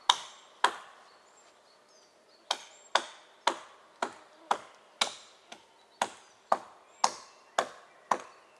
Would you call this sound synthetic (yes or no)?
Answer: no